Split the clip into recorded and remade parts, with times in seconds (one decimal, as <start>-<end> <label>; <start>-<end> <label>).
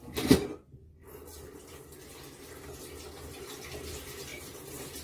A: 0.0-4.3 recorded; 4.3-5.0 remade